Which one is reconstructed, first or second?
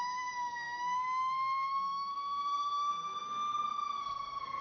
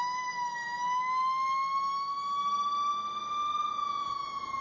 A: first